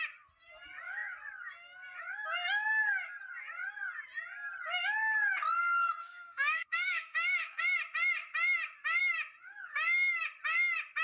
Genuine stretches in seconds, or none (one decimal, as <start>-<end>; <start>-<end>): 0.0-6.0; 7.6-11.0

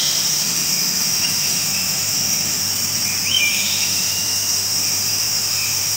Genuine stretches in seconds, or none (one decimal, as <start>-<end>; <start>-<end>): 2.7-3.3

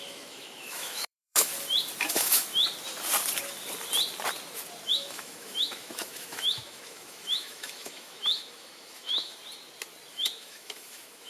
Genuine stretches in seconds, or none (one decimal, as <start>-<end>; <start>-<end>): 1.5-2.1; 2.5-4.9; 9.4-10.1

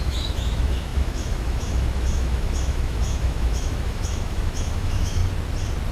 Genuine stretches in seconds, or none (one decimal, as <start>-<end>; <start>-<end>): 5.2-5.9

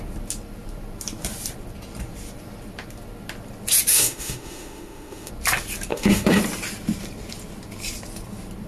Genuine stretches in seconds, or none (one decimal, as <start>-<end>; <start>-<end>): 0.0-3.9; 5.3-5.9; 6.4-8.7

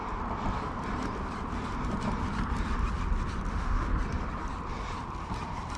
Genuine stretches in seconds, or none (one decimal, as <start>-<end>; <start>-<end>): 0.0-3.5; 3.9-5.8